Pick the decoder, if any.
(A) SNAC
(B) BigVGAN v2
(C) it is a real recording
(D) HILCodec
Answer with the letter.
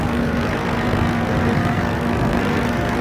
A